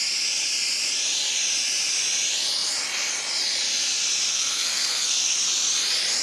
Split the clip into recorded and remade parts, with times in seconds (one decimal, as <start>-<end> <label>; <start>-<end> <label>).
0.0-4.3 recorded; 4.3-5.4 remade; 5.4-6.2 recorded